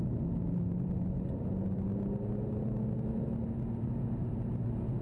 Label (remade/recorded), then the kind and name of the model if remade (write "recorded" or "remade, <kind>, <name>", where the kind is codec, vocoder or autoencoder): recorded